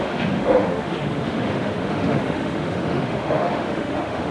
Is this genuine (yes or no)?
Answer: no